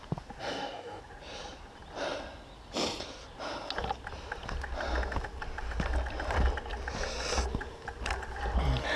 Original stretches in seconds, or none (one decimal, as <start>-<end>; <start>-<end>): 0.0-0.4; 1.0-9.0